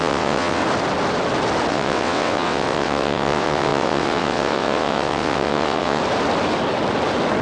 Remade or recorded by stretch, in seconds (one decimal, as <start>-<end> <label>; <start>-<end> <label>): 0.0-0.6 remade; 0.6-1.7 recorded; 1.7-6.0 remade; 6.0-7.4 recorded